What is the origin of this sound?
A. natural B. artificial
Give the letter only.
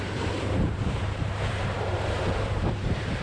B